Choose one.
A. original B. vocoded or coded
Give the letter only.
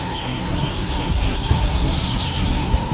B